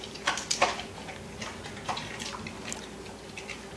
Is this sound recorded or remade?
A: recorded